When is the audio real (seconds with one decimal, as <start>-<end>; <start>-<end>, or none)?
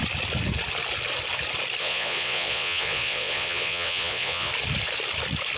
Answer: 0.0-1.8; 4.5-5.6